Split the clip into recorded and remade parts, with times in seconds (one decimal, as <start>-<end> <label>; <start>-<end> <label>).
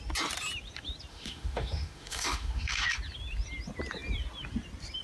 0.0-1.1 recorded; 1.1-2.9 remade; 2.9-5.0 recorded